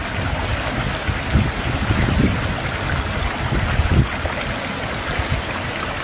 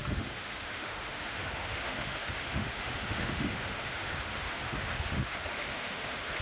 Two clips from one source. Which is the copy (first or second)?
second